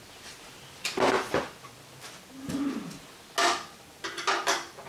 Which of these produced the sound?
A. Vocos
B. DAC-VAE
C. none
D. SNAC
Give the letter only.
C